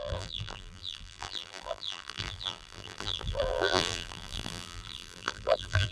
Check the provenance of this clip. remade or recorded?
remade